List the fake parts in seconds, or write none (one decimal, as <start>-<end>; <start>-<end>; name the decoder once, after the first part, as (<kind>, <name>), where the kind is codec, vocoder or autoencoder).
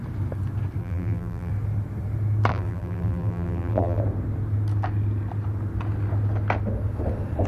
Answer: 0.8-1.5 (vocoder, BigVGAN v2); 2.5-4.0